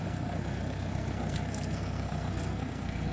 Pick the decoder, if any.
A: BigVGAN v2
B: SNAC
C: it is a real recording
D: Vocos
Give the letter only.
B